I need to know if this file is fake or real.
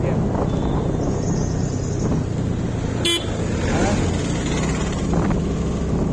real